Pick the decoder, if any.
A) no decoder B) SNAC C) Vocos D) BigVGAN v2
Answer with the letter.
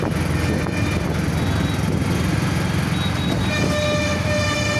A